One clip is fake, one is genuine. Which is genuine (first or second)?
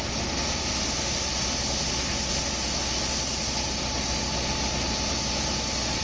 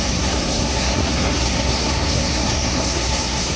first